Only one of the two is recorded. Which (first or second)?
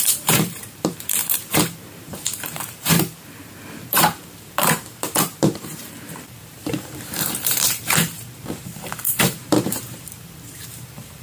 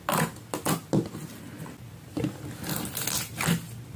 second